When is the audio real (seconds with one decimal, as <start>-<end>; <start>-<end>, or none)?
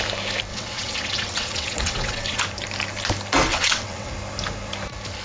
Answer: 0.0-0.5; 2.4-3.5; 4.1-5.2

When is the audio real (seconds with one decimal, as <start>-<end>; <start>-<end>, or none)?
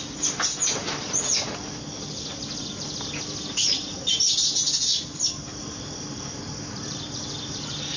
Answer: 0.0-3.9; 6.4-8.0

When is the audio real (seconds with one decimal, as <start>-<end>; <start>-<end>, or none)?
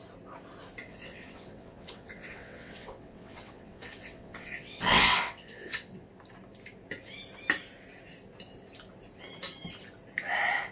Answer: 0.0-0.9; 6.1-10.7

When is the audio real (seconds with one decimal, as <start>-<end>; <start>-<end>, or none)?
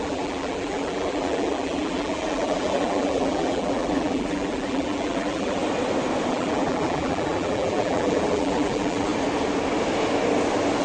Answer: 5.6-6.3; 9.1-10.8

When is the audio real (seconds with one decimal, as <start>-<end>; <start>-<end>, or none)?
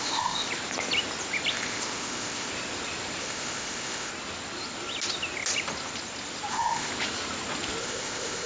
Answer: 0.5-1.5; 2.5-3.2; 4.1-6.5; 6.9-7.8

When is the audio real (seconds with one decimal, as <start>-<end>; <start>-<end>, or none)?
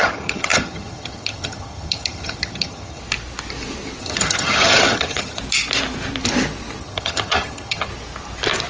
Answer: 3.0-4.0; 5.4-6.8; 7.9-8.7